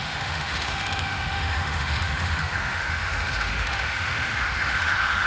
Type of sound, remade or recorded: remade